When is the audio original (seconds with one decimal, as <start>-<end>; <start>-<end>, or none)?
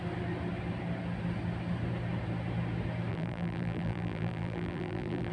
0.0-3.1